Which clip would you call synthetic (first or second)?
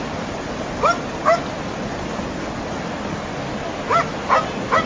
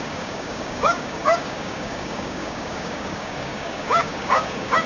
second